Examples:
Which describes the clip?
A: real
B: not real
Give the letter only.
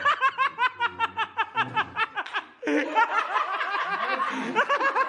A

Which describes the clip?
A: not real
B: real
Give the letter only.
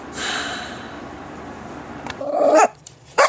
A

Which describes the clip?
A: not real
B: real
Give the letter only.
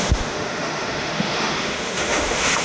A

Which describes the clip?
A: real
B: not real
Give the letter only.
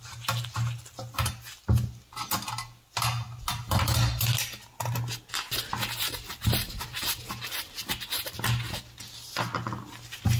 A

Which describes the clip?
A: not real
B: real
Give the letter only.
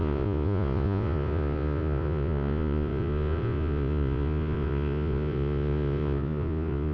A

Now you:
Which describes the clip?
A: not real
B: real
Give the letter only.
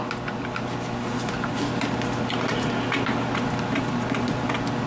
B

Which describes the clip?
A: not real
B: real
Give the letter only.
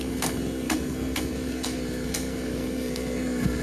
A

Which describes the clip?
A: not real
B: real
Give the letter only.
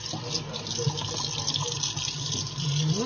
B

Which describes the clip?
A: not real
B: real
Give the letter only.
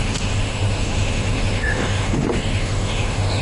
A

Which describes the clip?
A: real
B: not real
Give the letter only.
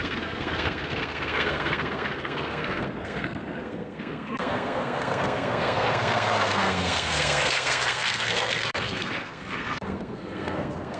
B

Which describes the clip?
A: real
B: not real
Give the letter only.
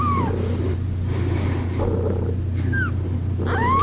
A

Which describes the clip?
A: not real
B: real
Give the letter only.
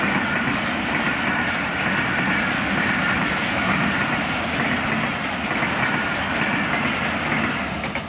B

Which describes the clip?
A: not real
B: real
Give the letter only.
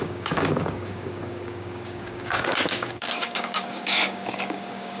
A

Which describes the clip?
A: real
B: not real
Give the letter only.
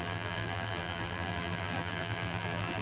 B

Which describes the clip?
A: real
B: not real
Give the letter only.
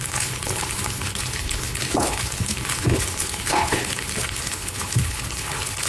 B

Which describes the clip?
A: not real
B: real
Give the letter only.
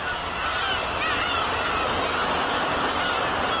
B